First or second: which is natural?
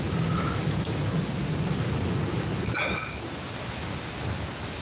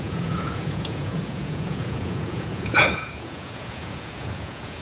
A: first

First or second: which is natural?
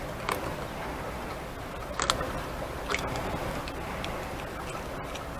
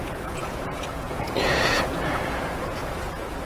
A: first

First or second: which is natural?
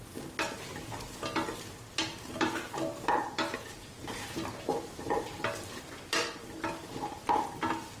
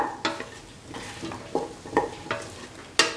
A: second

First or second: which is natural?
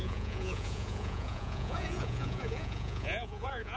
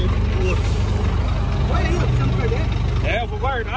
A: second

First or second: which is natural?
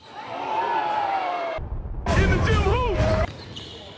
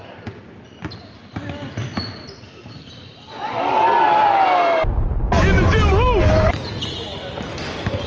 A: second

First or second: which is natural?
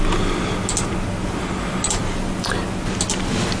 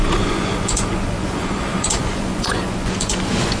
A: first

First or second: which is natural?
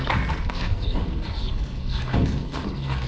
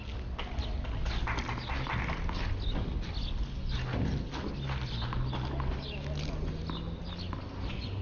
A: second